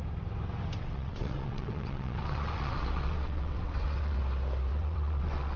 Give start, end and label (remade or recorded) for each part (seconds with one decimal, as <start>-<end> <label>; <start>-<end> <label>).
0.0-0.8 recorded; 0.8-4.2 remade; 4.2-4.7 recorded; 4.7-5.6 remade